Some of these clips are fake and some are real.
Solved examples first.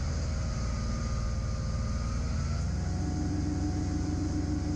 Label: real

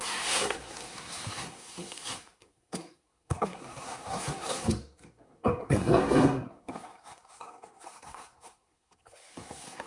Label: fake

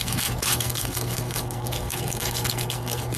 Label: fake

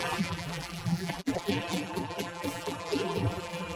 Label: fake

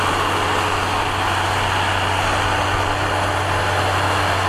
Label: real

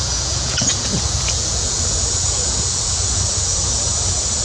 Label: fake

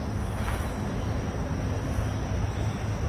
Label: real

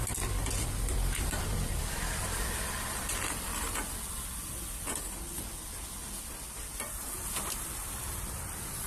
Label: real